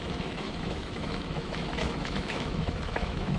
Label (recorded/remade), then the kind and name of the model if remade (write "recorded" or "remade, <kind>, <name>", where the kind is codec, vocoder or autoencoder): remade, autoencoder, DAC-VAE